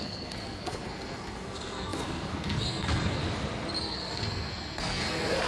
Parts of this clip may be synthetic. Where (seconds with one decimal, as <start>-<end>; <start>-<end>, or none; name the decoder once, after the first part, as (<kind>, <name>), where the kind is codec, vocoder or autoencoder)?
0.0-3.2 (codec, SNAC); 3.8-5.5